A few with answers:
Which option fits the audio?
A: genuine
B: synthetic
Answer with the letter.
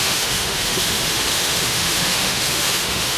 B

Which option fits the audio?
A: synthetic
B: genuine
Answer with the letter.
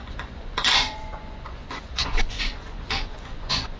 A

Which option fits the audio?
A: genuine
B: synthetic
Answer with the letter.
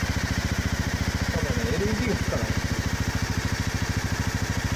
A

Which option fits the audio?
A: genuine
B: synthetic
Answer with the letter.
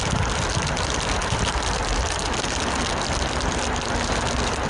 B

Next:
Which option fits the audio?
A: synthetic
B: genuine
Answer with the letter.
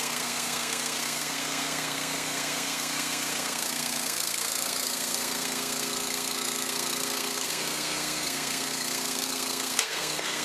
A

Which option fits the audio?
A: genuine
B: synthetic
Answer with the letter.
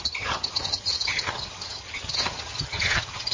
B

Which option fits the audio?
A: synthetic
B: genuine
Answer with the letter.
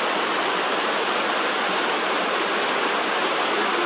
B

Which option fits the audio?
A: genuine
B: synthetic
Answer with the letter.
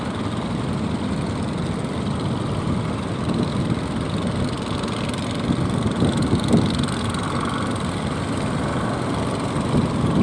A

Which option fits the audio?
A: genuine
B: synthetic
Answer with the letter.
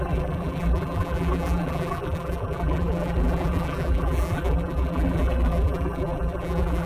B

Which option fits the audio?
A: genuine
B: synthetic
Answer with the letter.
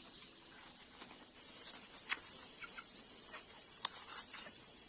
A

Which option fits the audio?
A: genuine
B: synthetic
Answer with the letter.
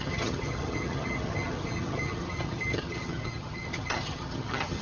B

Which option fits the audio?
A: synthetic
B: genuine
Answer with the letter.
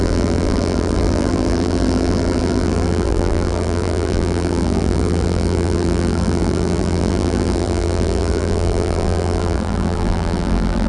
A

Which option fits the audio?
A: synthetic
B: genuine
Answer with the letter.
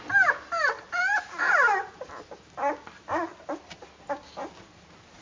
B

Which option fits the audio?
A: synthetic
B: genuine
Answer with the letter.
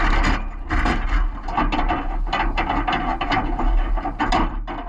B